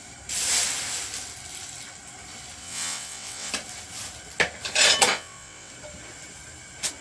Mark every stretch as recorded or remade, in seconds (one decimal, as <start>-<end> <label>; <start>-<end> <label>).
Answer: 0.0-2.6 recorded; 2.6-3.5 remade; 3.5-5.1 recorded; 5.1-5.7 remade; 5.7-7.0 recorded